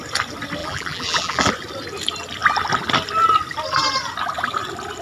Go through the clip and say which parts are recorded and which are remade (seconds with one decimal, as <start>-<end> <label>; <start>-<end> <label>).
0.0-0.6 recorded; 0.6-1.5 remade; 1.5-5.0 recorded